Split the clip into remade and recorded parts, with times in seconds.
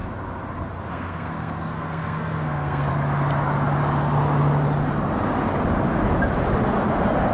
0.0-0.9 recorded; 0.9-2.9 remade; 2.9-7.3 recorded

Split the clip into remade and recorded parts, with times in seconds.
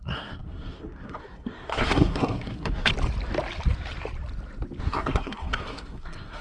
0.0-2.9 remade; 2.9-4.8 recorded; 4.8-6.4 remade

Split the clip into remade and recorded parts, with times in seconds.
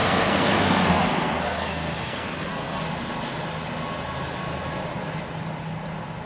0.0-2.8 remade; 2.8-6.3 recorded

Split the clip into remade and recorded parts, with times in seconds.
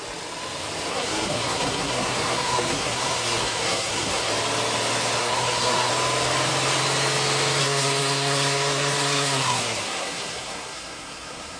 0.0-0.9 recorded; 0.9-4.3 remade; 4.3-5.2 recorded; 5.2-5.9 remade; 5.9-7.6 recorded; 7.6-11.6 remade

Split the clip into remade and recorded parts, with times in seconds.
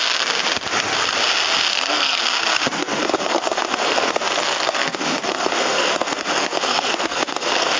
0.0-1.7 recorded; 1.7-2.2 remade; 2.2-2.8 recorded; 2.8-7.8 remade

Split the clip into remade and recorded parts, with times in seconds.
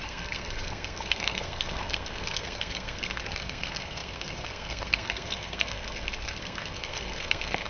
0.0-7.7 remade